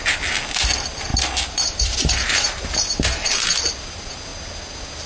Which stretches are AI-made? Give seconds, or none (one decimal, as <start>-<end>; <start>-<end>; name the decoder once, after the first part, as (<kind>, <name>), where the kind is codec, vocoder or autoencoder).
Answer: 1.1-3.6 (vocoder, BigVGAN v2)